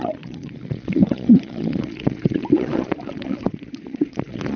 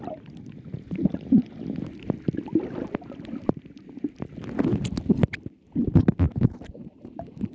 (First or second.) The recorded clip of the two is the second